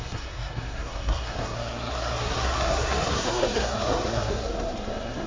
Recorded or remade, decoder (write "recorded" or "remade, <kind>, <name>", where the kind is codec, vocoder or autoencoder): remade, codec, SNAC